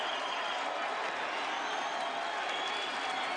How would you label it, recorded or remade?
recorded